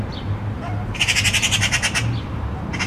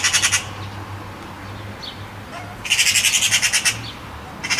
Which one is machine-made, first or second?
first